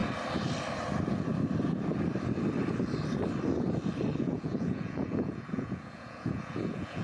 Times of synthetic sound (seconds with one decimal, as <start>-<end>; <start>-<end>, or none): 4.2-7.0